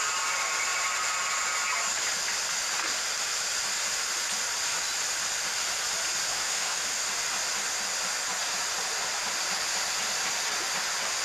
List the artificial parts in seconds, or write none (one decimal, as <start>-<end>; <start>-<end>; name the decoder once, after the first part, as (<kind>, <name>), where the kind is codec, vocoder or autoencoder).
6.3-6.8 (autoencoder, DAC-VAE)